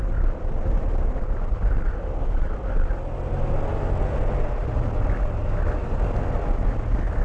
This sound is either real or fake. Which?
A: real